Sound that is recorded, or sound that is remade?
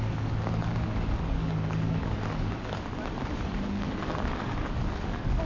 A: remade